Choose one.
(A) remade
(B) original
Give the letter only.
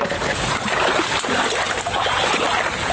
B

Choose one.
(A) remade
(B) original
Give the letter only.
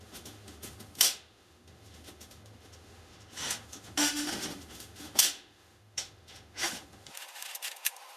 A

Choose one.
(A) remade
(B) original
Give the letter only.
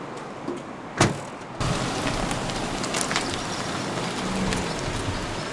B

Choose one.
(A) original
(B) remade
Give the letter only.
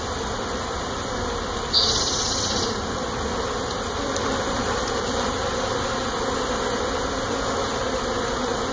A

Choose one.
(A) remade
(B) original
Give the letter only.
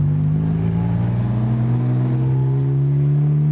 B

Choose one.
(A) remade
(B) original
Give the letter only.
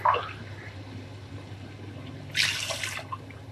B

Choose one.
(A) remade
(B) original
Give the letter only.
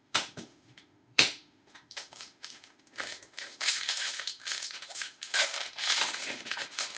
A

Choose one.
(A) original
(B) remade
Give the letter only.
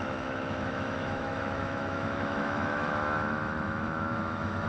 B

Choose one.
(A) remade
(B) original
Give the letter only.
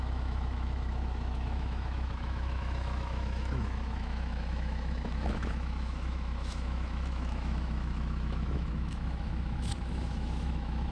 A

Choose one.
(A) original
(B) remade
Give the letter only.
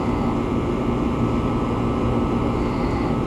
A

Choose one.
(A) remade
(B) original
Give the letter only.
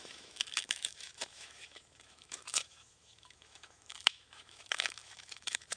A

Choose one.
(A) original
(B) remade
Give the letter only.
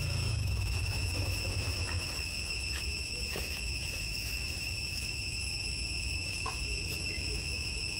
B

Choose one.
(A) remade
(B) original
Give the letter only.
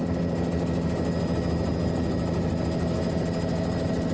B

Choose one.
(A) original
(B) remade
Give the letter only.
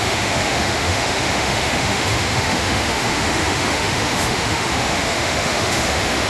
B